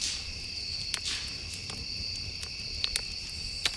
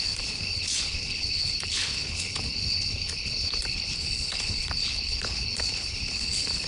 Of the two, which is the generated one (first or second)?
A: second